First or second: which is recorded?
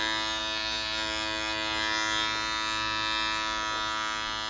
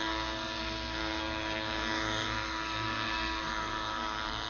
first